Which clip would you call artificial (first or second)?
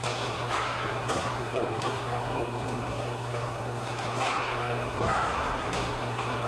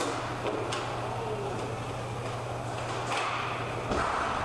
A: first